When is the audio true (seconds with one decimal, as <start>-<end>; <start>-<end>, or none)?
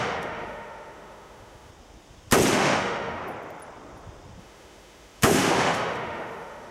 1.7-2.5; 3.2-4.4